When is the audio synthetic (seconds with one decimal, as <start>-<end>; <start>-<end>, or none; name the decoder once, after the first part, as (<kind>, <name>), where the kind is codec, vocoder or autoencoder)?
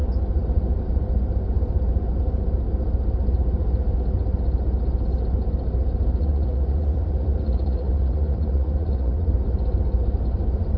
6.2-9.3 (vocoder, Vocos)